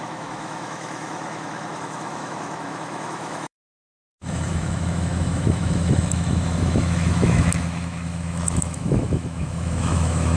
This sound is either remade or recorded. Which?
remade